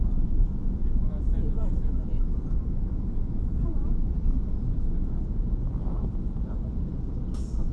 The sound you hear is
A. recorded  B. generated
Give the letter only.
B